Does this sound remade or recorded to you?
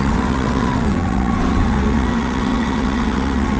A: remade